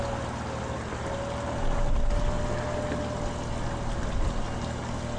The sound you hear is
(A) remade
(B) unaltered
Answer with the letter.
B